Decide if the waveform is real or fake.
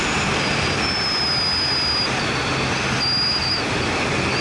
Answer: real